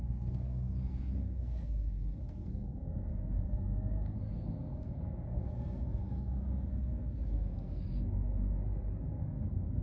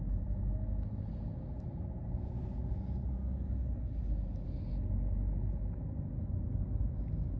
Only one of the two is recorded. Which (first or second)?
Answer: second